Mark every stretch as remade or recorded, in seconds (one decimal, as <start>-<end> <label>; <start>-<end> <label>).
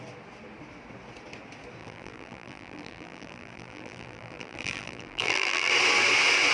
0.0-1.8 recorded; 1.8-5.7 remade; 5.7-6.5 recorded